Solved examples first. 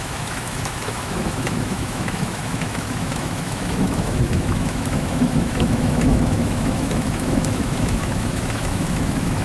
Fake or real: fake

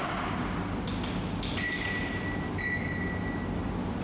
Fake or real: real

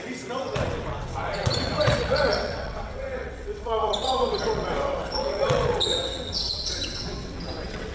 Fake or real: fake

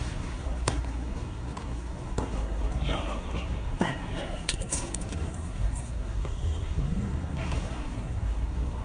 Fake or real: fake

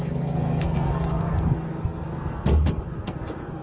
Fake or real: fake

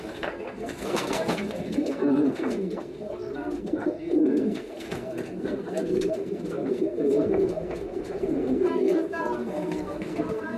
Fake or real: fake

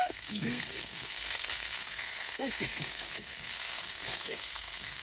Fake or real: fake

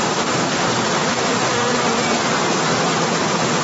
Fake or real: real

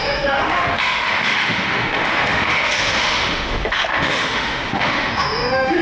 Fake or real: fake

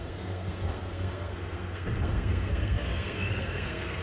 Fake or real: fake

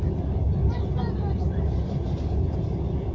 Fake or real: real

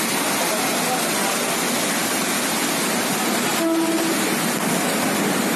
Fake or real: real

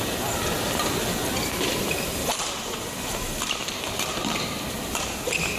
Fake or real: fake